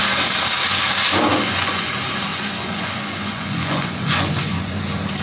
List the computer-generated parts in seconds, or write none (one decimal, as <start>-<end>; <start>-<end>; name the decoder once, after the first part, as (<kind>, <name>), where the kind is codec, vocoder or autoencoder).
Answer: 1.3-1.9 (vocoder, Vocos); 2.3-4.8